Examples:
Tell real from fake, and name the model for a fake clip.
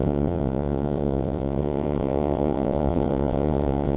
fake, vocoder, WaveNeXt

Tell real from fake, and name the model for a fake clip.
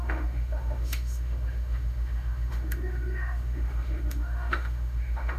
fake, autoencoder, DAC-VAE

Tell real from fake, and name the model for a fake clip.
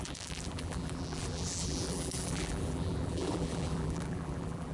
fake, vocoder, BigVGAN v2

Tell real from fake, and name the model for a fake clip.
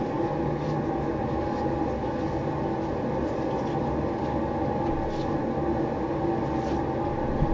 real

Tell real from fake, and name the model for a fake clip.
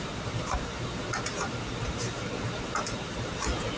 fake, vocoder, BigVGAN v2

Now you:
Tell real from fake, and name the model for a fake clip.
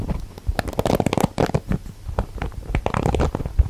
real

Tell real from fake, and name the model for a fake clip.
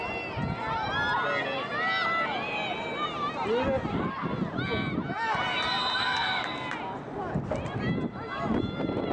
real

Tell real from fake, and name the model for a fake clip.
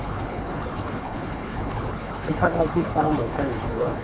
fake, codec, HILCodec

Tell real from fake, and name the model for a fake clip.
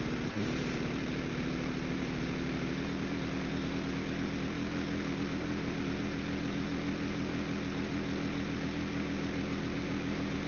real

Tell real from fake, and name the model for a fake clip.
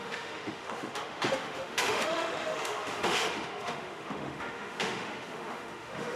fake, autoencoder, DAC-VAE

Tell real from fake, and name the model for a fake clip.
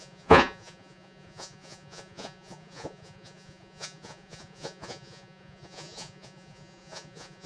fake, vocoder, Vocos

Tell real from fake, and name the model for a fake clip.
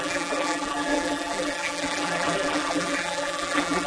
fake, vocoder, BigVGAN v2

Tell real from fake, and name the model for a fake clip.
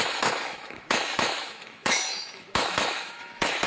fake, autoencoder, DAC-VAE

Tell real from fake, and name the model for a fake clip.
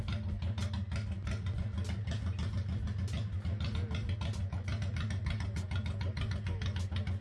real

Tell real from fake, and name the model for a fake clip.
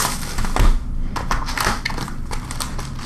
real